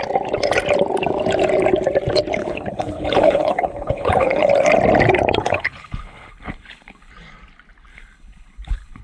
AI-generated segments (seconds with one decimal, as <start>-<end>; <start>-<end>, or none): 2.4-4.5; 5.4-7.1; 7.9-9.0